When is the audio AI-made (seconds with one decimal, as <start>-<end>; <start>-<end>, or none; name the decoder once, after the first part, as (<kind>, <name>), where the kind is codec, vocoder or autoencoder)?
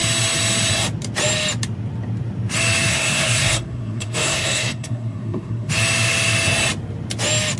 2.9-5.7 (codec, SNAC)